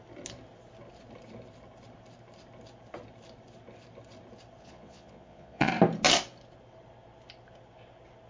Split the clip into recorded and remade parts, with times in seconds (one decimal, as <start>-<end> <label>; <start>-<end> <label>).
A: 0.0-4.6 recorded; 4.6-5.7 remade; 5.7-8.3 recorded